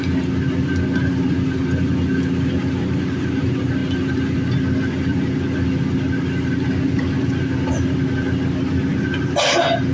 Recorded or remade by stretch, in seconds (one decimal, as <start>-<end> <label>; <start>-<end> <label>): 0.0-9.9 recorded